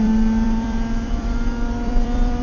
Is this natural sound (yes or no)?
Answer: no